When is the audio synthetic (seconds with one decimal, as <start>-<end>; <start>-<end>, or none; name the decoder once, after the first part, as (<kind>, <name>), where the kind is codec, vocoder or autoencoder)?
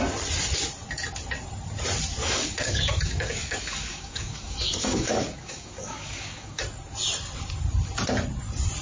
2.2-6.6 (codec, DAC)